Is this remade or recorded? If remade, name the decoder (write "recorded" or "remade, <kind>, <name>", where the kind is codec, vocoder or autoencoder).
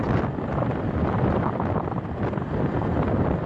recorded